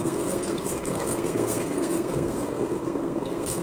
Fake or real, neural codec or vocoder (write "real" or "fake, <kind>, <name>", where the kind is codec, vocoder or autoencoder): fake, codec, SNAC